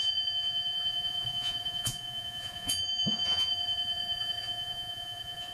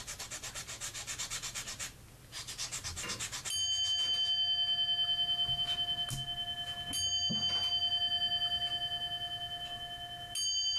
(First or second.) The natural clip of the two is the second